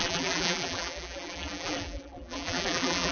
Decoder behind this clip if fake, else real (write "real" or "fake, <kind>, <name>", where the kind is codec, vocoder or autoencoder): fake, vocoder, BigVGAN v2